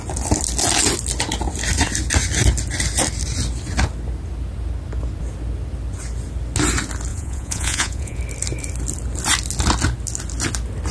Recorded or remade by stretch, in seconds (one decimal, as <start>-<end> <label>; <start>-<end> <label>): 0.0-7.1 recorded; 7.1-8.2 remade; 8.2-10.9 recorded